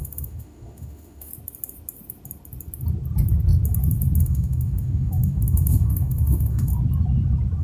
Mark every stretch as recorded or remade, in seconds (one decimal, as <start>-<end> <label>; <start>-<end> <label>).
0.0-1.3 remade; 1.3-4.2 recorded; 4.2-6.7 remade; 6.7-7.6 recorded